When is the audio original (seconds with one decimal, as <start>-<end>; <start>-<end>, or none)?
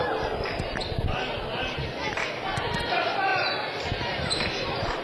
0.0-5.0